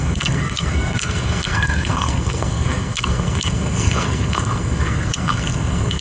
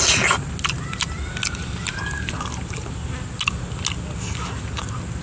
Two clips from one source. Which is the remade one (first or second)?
first